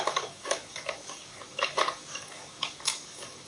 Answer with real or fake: fake